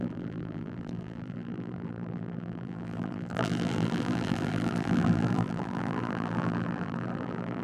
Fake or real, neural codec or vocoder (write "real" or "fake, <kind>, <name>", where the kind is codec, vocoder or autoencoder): fake, vocoder, BigVGAN v2